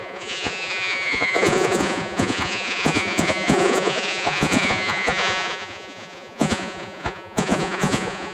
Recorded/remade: remade